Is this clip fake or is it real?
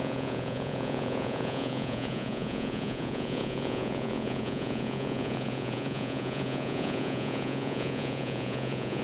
fake